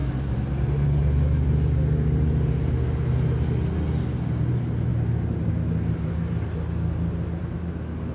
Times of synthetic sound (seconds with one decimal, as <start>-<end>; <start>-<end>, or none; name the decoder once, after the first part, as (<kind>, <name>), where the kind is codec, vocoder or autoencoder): none